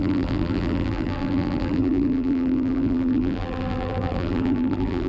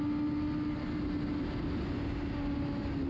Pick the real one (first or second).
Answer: second